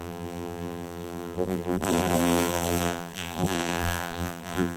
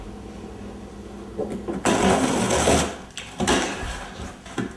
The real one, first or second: second